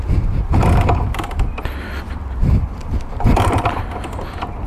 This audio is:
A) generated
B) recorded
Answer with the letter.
B